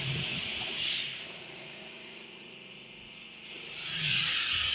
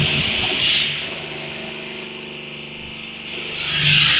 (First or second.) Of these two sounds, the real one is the second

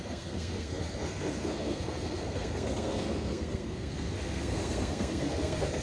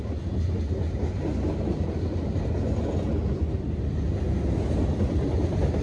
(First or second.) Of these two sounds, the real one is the second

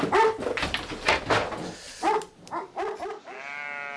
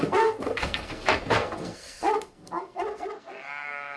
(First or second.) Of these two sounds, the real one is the first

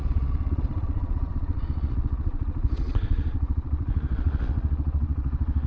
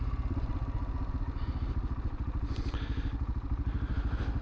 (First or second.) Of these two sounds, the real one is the second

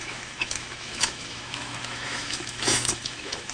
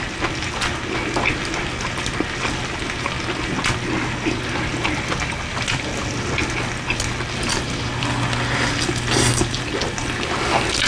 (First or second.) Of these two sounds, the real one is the second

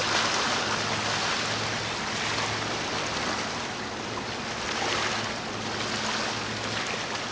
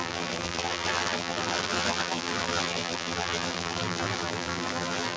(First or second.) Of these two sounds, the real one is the first